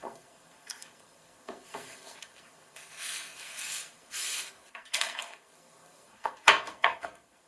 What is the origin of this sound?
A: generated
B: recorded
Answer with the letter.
A